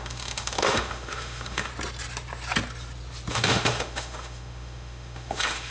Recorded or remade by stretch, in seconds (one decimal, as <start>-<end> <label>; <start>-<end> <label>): 0.0-1.7 remade; 1.7-3.3 recorded; 3.3-5.7 remade